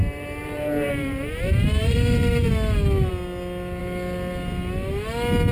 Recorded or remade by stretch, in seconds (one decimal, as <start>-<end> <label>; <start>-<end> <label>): 0.0-2.5 remade; 2.5-5.5 recorded